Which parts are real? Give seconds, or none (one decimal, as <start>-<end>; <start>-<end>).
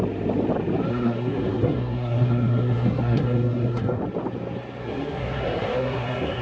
0.0-0.9; 4.0-4.8